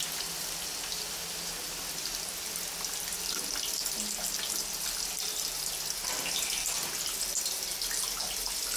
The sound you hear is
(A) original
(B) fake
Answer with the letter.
A